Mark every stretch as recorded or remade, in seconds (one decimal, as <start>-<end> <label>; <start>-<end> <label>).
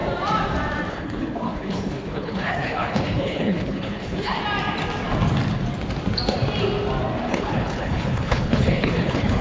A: 0.0-0.9 recorded; 0.9-4.4 remade; 4.4-7.3 recorded; 7.3-9.4 remade